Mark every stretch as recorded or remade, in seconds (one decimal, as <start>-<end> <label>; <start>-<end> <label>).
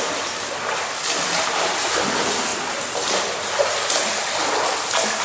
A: 0.0-5.2 recorded